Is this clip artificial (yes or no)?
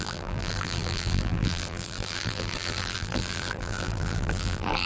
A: yes